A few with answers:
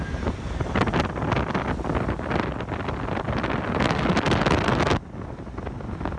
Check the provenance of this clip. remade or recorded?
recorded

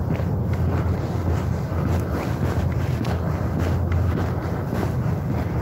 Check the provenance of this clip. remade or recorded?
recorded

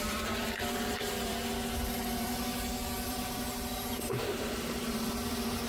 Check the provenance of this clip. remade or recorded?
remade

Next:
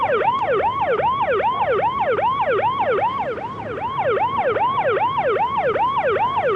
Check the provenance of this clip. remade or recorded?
recorded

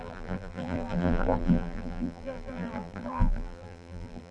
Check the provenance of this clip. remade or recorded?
remade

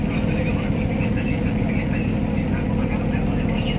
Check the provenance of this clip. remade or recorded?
recorded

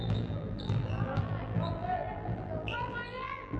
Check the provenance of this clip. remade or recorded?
remade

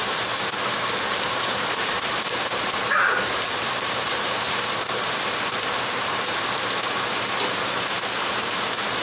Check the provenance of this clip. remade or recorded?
remade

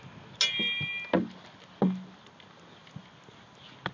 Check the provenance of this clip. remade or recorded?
recorded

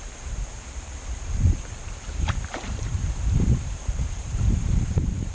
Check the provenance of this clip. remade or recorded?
remade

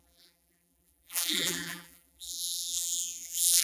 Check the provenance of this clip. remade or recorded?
remade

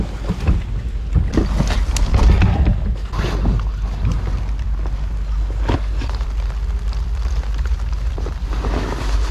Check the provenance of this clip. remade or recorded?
recorded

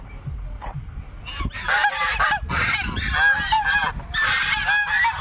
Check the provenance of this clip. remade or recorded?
recorded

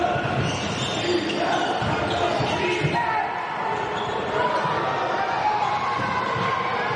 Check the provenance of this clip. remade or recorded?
recorded